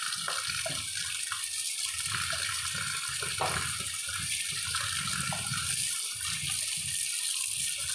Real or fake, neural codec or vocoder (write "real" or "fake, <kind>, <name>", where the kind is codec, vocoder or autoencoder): real